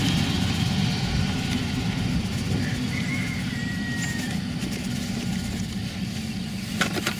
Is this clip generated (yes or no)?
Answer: no